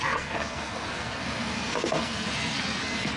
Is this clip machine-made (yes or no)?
yes